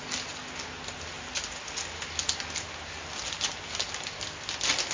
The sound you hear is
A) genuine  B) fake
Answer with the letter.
A